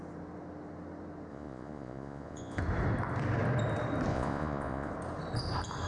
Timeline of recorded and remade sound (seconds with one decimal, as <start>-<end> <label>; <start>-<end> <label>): 0.0-1.3 recorded; 1.3-2.6 remade; 2.6-4.1 recorded; 4.1-4.9 remade; 4.9-5.9 recorded